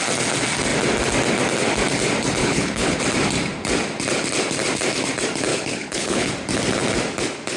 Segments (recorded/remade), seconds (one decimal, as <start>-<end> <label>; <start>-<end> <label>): 0.0-2.4 recorded; 2.4-3.0 remade; 3.0-5.5 recorded; 5.5-6.3 remade; 6.3-7.6 recorded